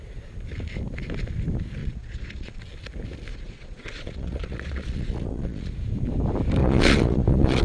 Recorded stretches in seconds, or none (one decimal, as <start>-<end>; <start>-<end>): 0.0-1.8; 2.6-3.3; 5.7-6.6